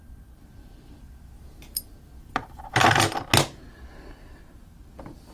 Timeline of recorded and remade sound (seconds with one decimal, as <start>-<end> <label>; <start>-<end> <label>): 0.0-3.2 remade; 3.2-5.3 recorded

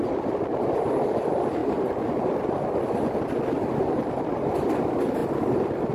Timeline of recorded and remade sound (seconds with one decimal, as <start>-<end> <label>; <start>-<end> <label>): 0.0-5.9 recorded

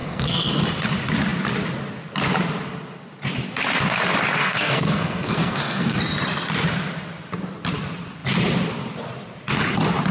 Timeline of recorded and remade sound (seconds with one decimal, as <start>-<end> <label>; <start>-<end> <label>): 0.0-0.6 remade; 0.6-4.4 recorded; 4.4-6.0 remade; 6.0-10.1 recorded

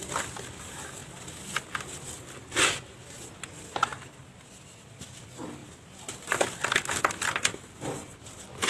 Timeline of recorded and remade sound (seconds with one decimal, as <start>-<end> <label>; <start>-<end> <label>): 0.0-8.7 recorded